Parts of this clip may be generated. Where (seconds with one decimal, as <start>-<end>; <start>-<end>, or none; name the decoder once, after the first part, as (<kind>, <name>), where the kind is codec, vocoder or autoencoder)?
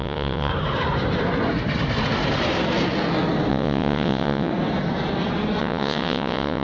0.0-0.5 (vocoder, WaveNeXt); 3.5-4.5; 5.6-6.6